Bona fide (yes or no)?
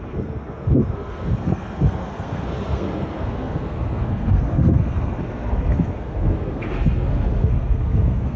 no